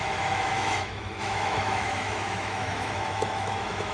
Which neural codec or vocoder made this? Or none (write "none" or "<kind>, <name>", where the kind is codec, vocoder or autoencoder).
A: autoencoder, DAC-VAE